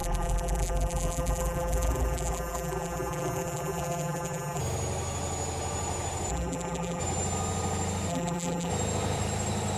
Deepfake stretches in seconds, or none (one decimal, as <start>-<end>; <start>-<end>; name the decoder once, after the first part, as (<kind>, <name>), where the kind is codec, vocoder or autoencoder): 0.0-4.6 (vocoder, BigVGAN v2); 6.3-7.0; 8.1-8.7